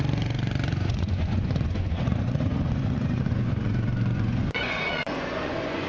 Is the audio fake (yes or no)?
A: yes